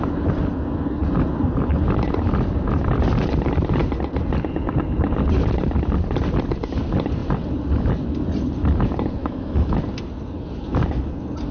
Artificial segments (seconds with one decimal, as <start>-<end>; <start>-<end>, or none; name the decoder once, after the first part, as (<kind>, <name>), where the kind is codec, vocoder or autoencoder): 9.2-9.8 (autoencoder, DAC-VAE)